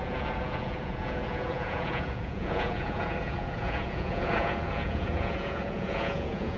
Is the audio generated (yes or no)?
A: yes